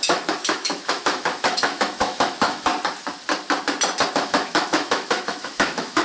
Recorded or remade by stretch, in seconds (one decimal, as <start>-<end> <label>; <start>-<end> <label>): 0.0-2.7 remade; 2.7-4.1 recorded; 4.1-6.0 remade